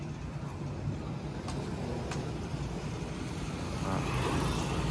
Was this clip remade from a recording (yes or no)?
no